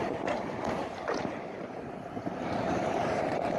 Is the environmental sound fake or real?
fake